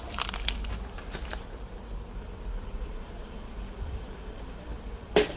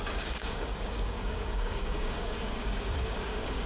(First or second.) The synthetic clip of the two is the second